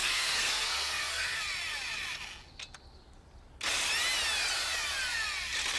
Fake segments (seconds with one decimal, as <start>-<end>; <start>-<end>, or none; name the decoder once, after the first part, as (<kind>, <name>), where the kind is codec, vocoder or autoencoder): 0.0-1.4 (codec, SNAC)